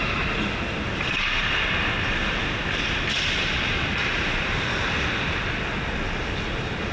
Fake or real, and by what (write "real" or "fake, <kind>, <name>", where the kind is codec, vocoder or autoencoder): real